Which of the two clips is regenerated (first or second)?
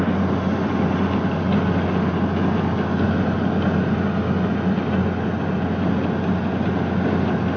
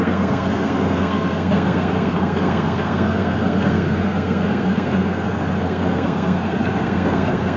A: second